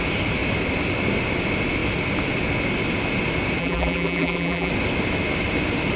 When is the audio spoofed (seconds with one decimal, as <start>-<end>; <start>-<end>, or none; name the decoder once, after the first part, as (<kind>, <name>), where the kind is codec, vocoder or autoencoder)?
3.6-4.7 (vocoder, BigVGAN v2)